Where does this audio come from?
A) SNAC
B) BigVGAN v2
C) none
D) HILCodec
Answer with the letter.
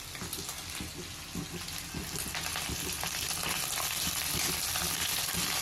C